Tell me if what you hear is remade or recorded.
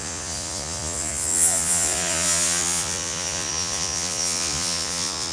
remade